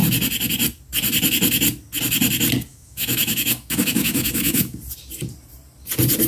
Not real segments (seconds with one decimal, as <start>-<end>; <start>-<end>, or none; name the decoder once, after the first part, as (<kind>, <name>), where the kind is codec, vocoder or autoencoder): 2.7-4.8 (autoencoder, DAC-VAE)